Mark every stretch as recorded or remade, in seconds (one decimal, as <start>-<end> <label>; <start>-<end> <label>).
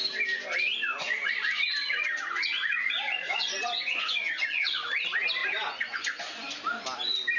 0.0-0.7 recorded; 0.7-4.9 remade; 4.9-5.4 recorded; 5.4-6.2 remade; 6.2-7.4 recorded